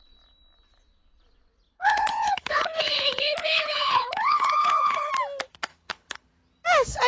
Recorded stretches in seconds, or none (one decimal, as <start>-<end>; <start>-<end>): 0.0-1.7; 5.1-5.7; 6.3-7.1